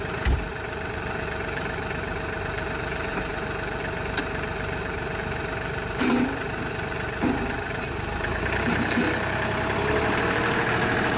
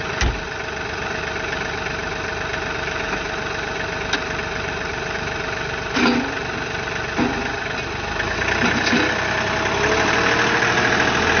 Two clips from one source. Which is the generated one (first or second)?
first